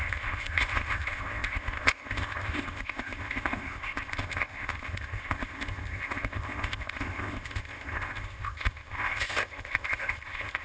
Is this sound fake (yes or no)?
yes